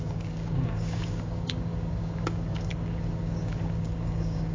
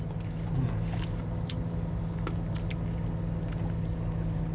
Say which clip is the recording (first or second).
second